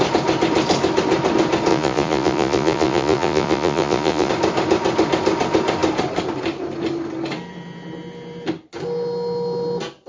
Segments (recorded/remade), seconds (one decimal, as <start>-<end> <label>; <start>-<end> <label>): 0.0-1.7 recorded; 1.7-4.3 remade; 4.3-10.1 recorded